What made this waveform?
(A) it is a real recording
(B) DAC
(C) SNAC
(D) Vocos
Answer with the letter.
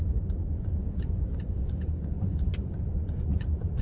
D